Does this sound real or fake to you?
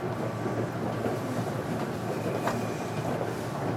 real